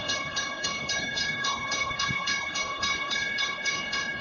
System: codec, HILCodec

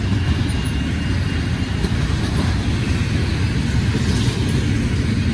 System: none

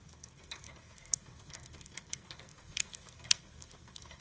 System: codec, SNAC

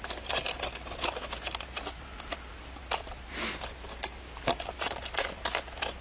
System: none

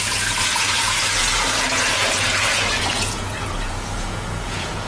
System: vocoder, Vocos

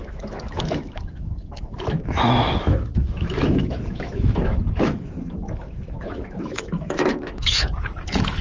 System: autoencoder, DAC-VAE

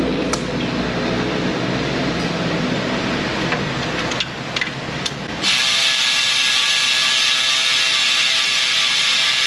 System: none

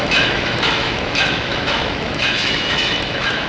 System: autoencoder, DAC-VAE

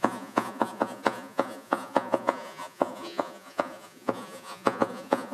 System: vocoder, Vocos